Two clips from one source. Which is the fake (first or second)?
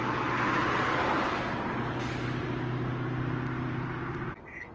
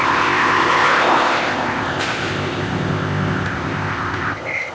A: second